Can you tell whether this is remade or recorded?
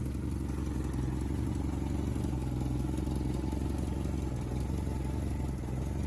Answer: recorded